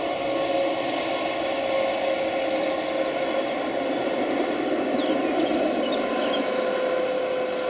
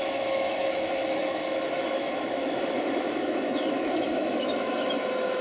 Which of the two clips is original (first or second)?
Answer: first